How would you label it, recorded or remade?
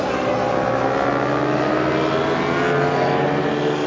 recorded